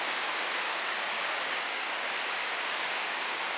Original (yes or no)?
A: no